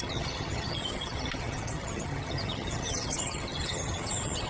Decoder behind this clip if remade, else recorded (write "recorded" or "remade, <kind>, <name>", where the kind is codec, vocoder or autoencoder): remade, vocoder, HiFi-GAN